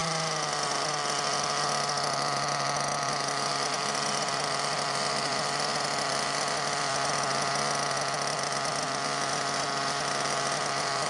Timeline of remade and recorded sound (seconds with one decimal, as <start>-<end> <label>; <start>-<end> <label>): 0.0-11.1 remade